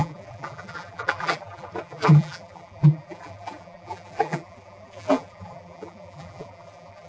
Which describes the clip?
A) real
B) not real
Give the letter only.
B